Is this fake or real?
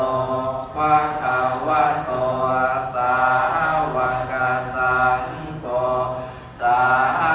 real